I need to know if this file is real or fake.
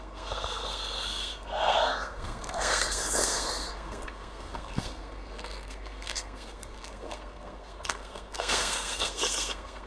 fake